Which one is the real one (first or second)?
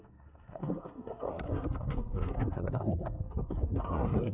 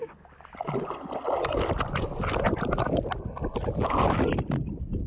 second